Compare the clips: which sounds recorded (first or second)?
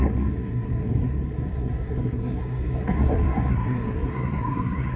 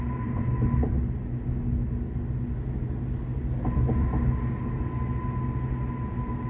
second